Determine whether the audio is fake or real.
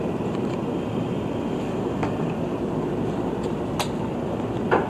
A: real